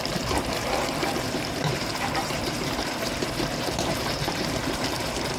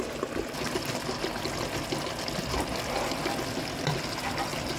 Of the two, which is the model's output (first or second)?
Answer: first